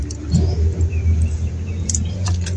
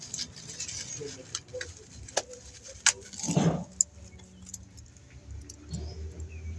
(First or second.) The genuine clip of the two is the second